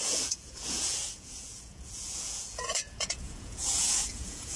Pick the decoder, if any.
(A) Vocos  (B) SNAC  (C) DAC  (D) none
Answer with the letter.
A